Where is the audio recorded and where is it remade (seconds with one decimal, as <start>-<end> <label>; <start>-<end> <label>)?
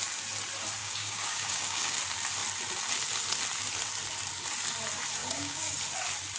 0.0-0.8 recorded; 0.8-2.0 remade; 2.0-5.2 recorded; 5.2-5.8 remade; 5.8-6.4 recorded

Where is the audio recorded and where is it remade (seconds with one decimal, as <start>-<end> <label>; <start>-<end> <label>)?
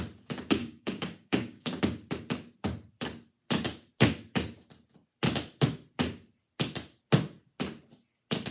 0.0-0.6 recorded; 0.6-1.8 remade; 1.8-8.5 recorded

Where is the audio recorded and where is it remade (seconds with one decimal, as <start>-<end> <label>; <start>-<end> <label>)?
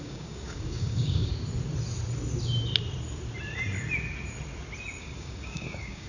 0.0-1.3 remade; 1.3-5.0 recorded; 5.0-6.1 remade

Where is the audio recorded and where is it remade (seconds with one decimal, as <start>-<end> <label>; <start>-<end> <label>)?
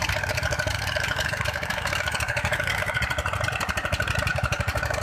0.0-3.0 remade; 3.0-4.3 recorded; 4.3-5.0 remade